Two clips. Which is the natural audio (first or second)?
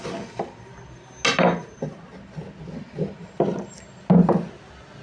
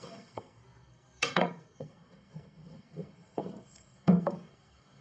first